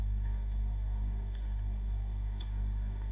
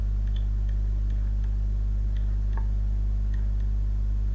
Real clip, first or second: second